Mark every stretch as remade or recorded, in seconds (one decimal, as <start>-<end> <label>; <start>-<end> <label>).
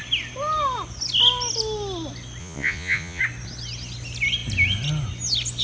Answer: 0.0-2.4 recorded; 2.4-3.2 remade; 3.2-5.6 recorded